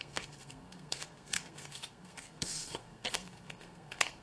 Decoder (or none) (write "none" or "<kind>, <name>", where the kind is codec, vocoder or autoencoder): codec, SNAC